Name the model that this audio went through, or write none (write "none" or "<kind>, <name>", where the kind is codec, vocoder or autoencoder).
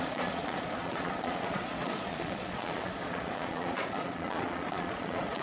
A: vocoder, Vocos